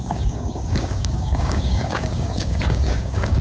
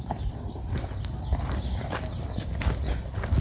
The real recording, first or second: second